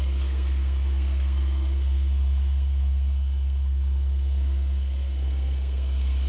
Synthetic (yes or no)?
yes